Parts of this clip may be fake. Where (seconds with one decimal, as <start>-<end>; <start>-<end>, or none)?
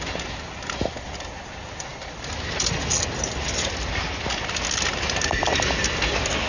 none